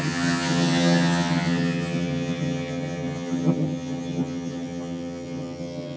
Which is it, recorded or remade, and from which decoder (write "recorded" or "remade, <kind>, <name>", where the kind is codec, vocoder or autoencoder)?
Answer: remade, vocoder, HiFi-GAN